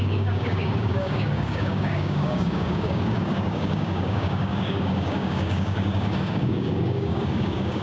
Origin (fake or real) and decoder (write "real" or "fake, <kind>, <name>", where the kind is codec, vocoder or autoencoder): fake, codec, DAC